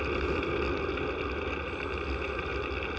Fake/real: real